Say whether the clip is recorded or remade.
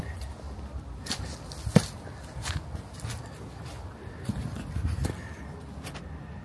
recorded